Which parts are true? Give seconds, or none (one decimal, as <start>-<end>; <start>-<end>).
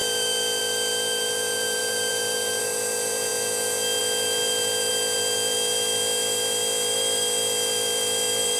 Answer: 3.3-4.0